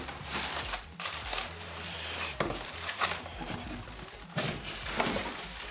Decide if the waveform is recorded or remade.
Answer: remade